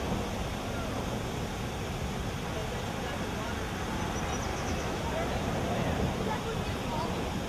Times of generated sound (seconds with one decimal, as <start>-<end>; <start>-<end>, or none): 4.5-5.0